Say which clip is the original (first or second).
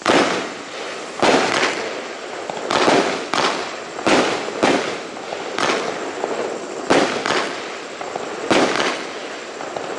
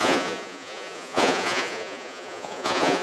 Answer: first